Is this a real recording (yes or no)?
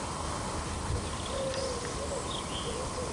yes